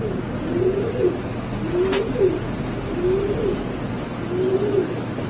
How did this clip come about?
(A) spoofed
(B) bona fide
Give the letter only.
B